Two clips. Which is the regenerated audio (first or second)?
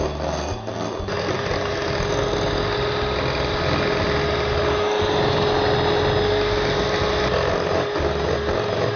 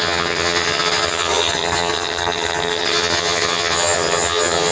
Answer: second